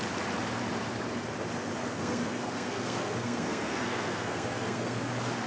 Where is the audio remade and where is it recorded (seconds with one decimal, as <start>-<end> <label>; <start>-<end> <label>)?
0.0-1.8 recorded; 1.8-5.1 remade; 5.1-5.5 recorded